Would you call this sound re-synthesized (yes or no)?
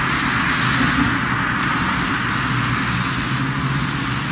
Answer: no